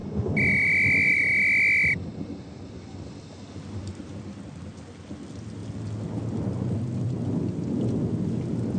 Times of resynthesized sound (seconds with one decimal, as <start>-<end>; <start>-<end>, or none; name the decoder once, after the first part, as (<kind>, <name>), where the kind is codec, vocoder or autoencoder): none